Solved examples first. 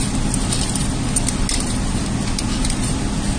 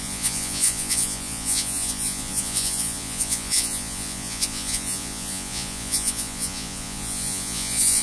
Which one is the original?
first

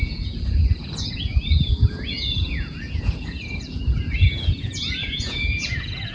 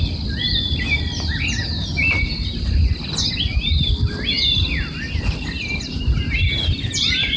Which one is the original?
second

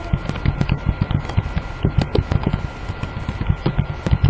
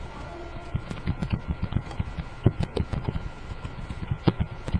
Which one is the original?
first